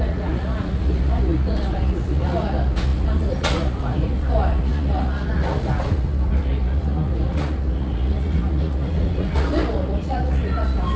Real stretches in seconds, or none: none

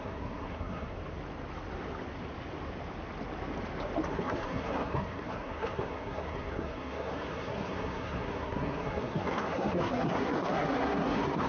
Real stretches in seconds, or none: 1.0-4.1

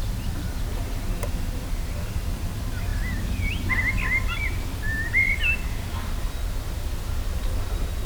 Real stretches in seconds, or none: 0.0-8.0